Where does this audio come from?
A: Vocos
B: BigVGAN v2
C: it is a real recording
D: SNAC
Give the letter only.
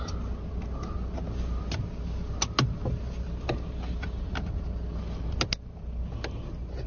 C